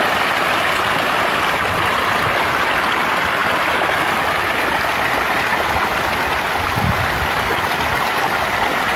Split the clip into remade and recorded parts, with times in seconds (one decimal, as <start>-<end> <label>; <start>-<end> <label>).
0.0-9.0 recorded